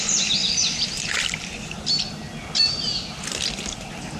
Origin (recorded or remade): remade